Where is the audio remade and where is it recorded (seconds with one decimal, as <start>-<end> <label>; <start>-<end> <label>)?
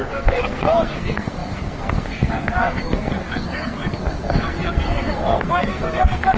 0.0-6.4 remade